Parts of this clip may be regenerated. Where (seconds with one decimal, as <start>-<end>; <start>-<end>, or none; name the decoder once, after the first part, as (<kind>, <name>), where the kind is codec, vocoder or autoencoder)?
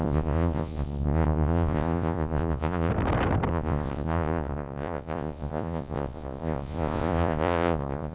0.0-2.9 (vocoder, Vocos); 3.5-8.1